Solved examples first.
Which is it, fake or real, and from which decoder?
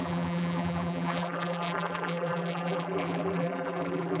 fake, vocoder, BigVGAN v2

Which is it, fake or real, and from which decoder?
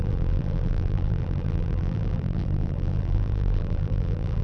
fake, vocoder, BigVGAN v2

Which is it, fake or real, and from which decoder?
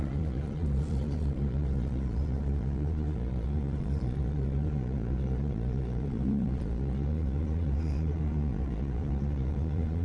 fake, vocoder, Vocos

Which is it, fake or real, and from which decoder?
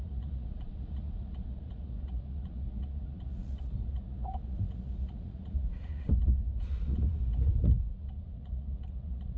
fake, vocoder, Vocos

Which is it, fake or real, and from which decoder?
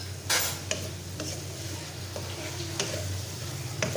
real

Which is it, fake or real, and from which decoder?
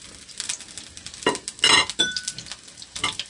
real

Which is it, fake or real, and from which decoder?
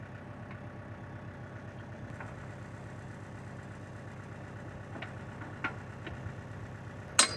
real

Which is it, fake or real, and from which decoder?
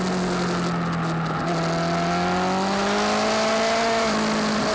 real